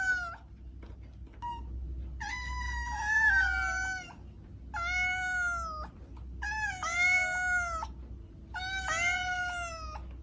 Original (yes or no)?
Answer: yes